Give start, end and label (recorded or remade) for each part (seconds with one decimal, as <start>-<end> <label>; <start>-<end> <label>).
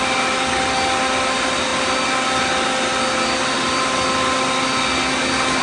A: 0.0-5.6 recorded